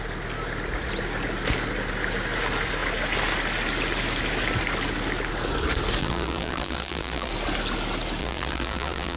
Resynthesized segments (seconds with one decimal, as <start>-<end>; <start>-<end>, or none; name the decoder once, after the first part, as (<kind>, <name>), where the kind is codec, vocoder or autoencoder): 6.0-7.3 (vocoder, BigVGAN v2); 8.2-9.2